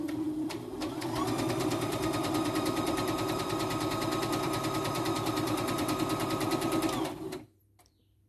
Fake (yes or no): yes